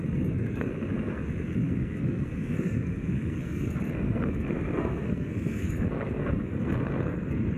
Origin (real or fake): fake